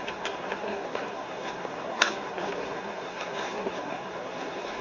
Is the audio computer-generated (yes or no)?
yes